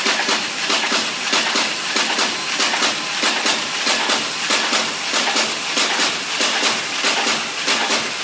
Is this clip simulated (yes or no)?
no